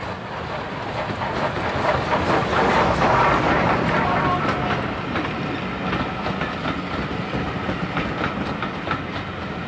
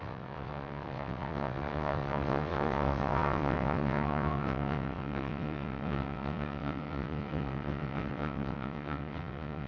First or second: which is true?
first